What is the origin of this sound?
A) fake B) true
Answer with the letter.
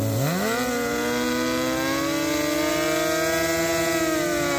B